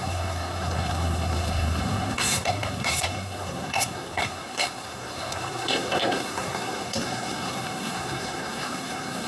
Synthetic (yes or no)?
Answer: yes